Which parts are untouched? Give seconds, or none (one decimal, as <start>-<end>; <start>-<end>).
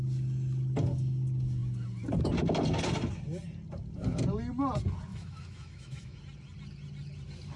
0.0-5.1; 6.2-7.6